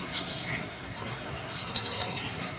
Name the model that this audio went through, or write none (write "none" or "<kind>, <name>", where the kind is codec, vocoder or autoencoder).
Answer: codec, SNAC